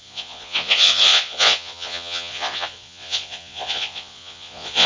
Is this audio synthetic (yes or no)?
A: yes